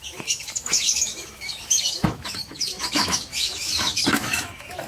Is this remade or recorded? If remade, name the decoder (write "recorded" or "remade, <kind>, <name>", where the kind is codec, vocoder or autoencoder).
remade, autoencoder, DAC-VAE